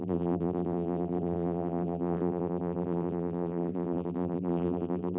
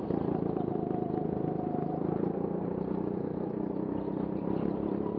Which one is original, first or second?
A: second